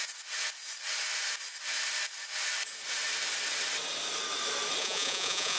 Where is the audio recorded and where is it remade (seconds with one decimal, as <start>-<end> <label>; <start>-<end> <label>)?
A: 0.0-4.8 recorded; 4.8-5.6 remade